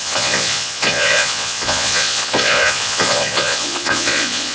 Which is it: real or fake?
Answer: fake